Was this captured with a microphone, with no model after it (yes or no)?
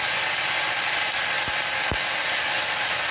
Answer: yes